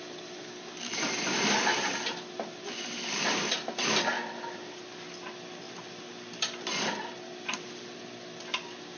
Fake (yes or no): no